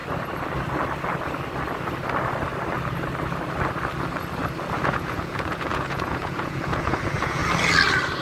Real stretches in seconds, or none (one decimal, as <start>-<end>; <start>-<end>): 0.0-4.8; 7.4-8.2